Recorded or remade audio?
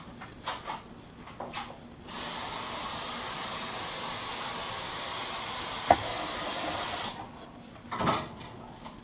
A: recorded